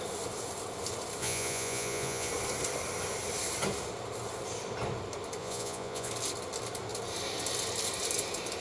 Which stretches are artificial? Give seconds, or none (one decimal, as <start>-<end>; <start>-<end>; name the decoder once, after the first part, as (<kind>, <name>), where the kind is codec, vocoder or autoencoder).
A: 1.2-2.3 (vocoder, Vocos); 5.4-6.1